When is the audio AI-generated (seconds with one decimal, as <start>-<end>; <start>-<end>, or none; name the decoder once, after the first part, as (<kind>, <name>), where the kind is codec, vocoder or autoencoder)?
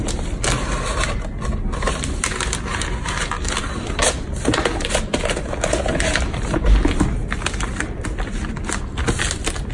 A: none